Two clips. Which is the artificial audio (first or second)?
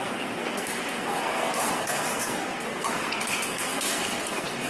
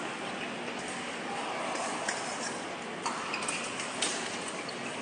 first